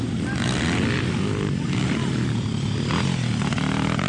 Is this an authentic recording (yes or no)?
no